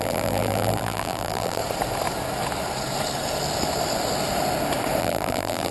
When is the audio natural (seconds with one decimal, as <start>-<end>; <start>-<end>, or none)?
1.6-5.0